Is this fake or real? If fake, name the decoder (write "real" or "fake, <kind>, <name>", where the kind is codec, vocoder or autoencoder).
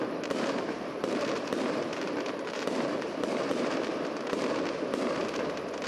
fake, vocoder, BigVGAN v2